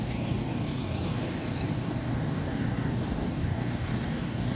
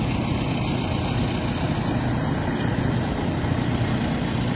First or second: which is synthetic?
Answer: first